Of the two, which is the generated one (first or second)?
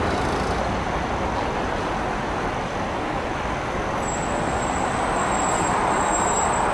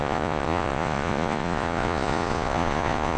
second